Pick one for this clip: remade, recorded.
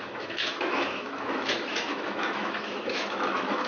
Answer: remade